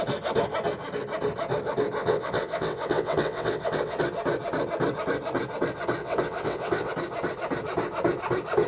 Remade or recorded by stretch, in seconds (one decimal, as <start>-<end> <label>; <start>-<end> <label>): 0.0-2.0 recorded; 2.0-4.0 remade; 4.0-6.0 recorded; 6.0-6.9 remade; 6.9-8.7 recorded